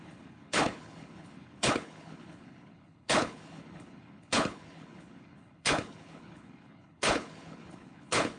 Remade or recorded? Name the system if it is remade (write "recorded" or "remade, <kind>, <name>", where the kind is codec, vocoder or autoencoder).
remade, codec, HILCodec